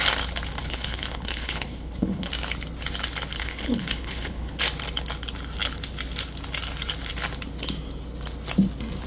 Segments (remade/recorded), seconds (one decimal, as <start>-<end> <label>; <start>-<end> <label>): 0.0-0.6 recorded; 0.6-2.3 remade; 2.3-3.4 recorded; 3.4-4.6 remade; 4.6-9.1 recorded